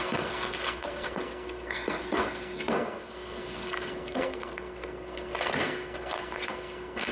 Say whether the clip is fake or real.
fake